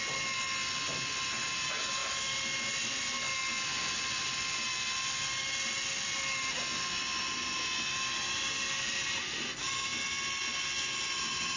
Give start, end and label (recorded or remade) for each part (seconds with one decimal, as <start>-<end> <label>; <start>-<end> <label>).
0.0-11.6 recorded